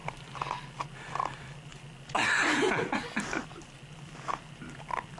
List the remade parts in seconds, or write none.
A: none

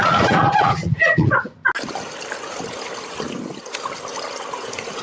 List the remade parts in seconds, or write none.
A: 0.0-1.6 (vocoder, Vocos); 4.6-5.0

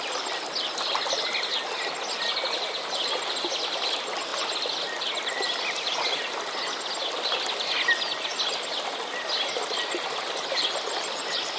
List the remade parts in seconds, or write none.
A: none

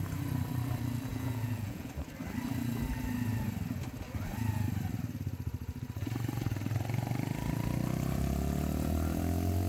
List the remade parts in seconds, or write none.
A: 1.1-1.9 (vocoder, Vocos)

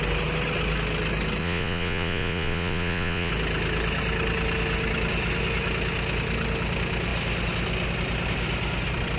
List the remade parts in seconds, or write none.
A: 1.4-3.3 (vocoder, Vocos)